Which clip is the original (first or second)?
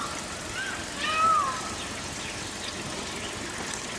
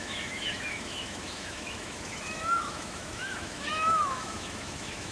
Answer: first